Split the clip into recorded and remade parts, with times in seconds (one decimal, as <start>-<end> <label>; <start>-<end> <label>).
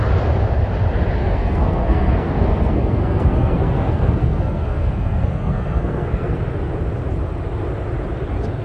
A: 0.0-1.2 recorded; 1.2-6.4 remade; 6.4-8.6 recorded